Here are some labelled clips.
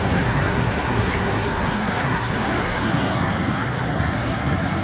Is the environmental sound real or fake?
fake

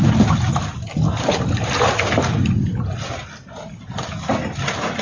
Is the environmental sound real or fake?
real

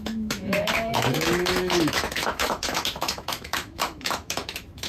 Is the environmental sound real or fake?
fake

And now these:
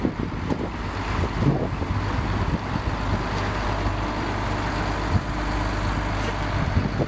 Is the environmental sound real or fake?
real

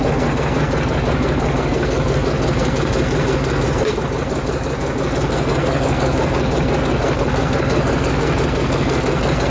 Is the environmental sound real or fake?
fake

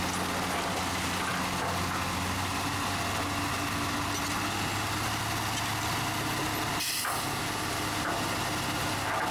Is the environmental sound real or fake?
real